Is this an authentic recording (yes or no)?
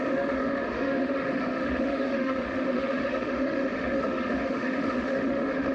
no